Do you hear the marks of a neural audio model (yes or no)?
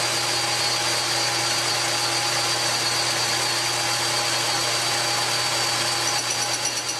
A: no